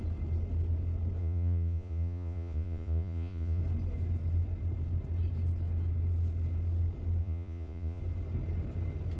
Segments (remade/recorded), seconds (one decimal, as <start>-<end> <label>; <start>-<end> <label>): 0.0-1.2 recorded; 1.2-3.6 remade; 3.6-7.2 recorded; 7.2-8.0 remade; 8.0-9.2 recorded